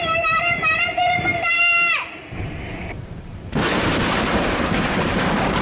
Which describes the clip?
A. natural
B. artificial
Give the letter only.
B